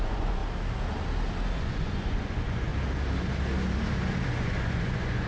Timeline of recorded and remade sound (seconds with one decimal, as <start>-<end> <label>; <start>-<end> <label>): 0.0-0.4 remade; 0.4-1.6 recorded; 1.6-2.7 remade; 2.7-4.3 recorded; 4.3-5.3 remade